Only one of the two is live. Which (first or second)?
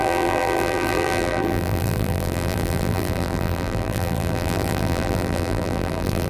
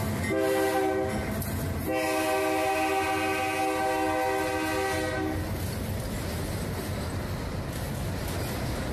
second